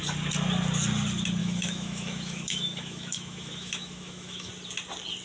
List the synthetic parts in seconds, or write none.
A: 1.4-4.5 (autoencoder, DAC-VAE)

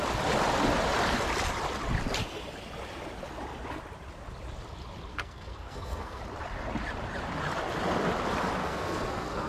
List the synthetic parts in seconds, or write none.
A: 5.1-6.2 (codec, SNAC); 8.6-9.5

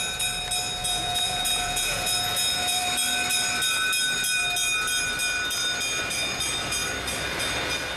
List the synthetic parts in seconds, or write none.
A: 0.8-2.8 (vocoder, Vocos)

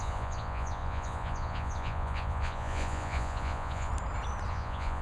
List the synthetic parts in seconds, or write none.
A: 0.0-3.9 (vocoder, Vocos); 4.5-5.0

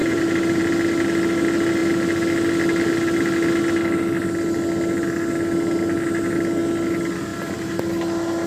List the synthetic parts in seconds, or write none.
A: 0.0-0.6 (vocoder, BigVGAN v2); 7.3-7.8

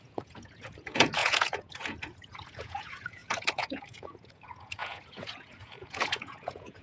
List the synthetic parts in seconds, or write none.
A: 0.0-6.8 (vocoder, Vocos)